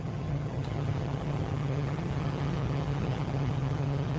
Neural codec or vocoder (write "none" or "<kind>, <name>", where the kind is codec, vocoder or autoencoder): vocoder, HiFi-GAN